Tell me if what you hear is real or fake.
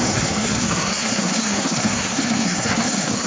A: fake